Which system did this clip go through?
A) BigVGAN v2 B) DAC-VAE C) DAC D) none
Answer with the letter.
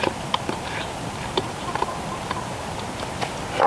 D